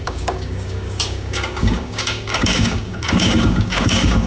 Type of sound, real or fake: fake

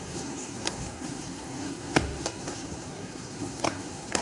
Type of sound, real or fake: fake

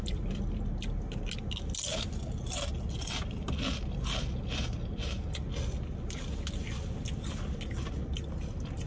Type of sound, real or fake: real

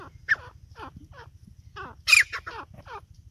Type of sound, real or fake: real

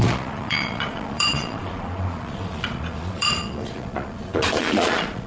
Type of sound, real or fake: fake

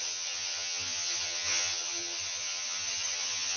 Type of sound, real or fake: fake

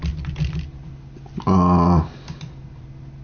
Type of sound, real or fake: real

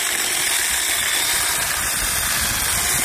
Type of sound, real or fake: real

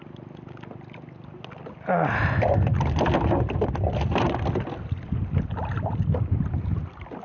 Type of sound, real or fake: real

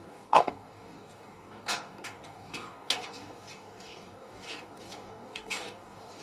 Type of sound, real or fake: fake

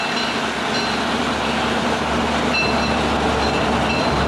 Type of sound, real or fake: real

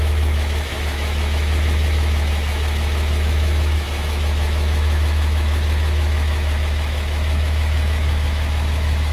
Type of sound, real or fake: fake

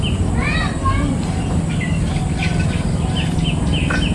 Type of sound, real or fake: real